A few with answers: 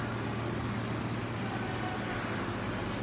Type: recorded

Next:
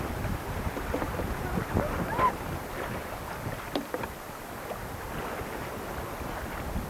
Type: recorded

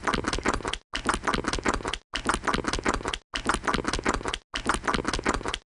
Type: recorded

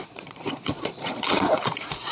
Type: remade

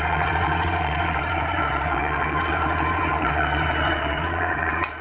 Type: remade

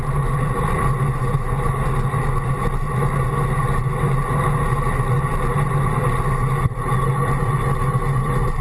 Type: recorded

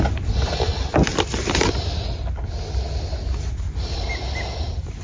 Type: recorded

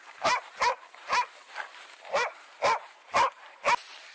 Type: recorded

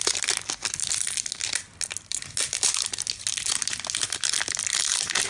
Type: recorded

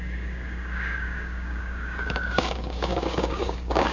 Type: remade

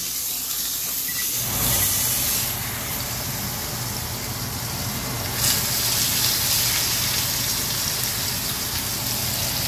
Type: recorded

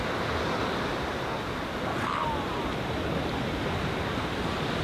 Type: recorded